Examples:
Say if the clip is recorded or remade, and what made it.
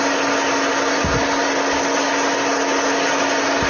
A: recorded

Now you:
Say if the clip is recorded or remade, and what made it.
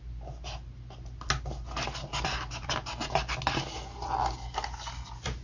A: recorded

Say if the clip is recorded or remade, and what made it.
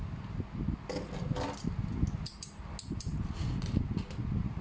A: recorded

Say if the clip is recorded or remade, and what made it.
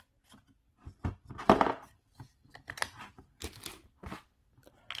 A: recorded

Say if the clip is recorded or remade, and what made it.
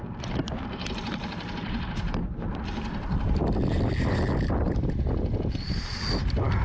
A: recorded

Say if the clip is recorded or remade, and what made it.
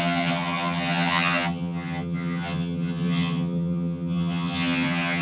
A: remade, vocoder, HiFi-GAN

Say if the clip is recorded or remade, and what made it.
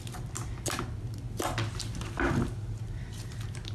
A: recorded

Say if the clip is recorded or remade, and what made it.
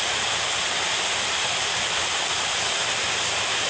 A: recorded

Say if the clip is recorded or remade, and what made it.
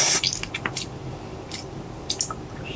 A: recorded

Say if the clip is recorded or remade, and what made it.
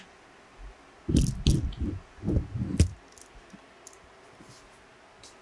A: recorded